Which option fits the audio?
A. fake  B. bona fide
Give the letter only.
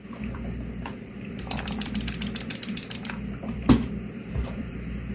A